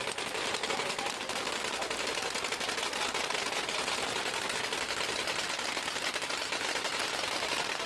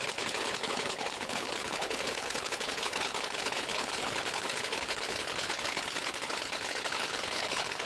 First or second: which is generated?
second